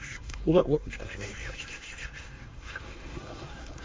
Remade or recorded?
remade